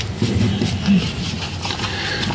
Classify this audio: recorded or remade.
recorded